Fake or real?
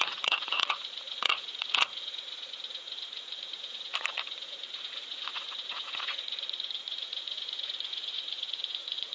fake